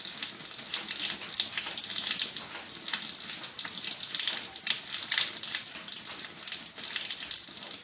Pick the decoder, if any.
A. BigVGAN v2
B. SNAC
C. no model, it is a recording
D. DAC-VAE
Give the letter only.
C